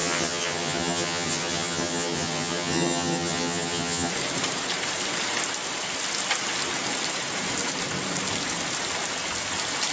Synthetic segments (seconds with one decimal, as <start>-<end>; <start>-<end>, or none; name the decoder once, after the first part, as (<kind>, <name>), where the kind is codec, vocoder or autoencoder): 0.0-4.1 (vocoder, HiFi-GAN)